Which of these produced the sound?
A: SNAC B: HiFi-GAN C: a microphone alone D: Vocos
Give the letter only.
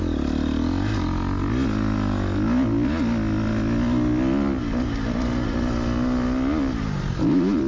C